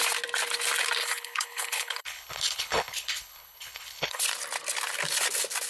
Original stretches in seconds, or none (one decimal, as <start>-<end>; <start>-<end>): 0.0-1.0; 4.2-5.7